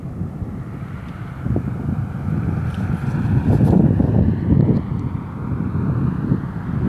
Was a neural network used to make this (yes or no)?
no